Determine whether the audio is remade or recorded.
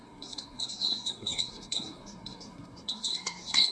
remade